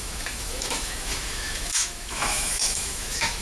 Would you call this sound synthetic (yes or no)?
yes